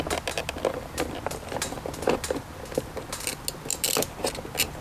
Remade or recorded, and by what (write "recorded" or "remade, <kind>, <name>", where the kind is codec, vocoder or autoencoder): recorded